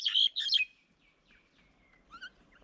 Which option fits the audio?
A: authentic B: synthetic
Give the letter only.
A